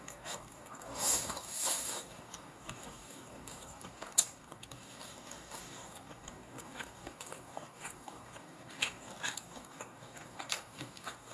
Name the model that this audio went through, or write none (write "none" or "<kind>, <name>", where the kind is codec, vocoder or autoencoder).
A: codec, DAC